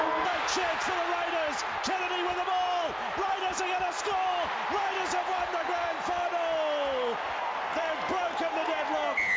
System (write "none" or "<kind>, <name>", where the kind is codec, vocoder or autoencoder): none